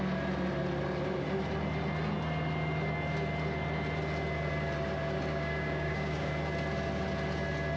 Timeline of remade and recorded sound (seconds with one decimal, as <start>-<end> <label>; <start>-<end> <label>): 0.0-5.3 recorded; 5.3-6.3 remade; 6.3-7.8 recorded